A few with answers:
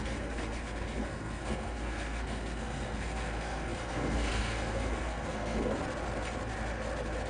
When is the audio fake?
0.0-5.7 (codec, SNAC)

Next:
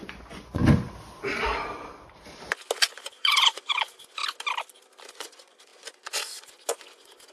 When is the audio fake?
0.0-0.6 (vocoder, Vocos); 3.0-4.2; 5.1-7.3